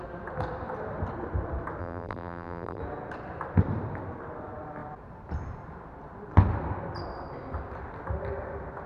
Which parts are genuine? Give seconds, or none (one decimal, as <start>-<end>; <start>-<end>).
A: 0.0-1.8; 2.8-8.9